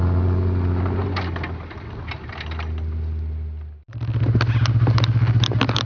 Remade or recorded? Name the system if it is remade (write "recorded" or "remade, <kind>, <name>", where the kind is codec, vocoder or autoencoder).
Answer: recorded